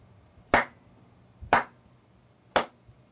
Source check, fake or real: real